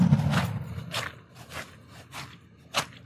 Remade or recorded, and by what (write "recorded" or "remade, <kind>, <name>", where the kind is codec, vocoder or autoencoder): recorded